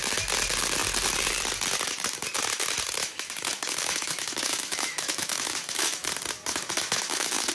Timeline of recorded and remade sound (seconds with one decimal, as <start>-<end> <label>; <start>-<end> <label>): 0.0-3.0 recorded; 3.0-6.1 remade; 6.1-6.5 recorded; 6.5-7.5 remade